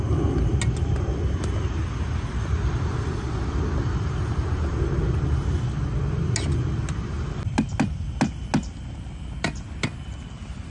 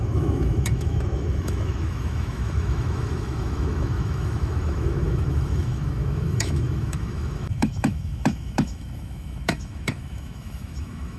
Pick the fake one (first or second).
second